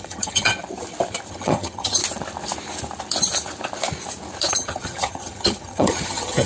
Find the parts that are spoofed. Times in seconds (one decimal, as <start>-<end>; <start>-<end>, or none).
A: 0.0-0.5; 1.3-2.0; 4.5-6.5